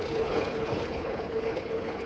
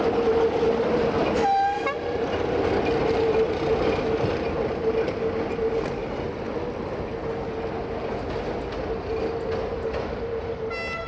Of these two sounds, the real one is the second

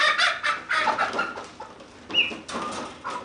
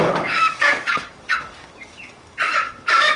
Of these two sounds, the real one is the first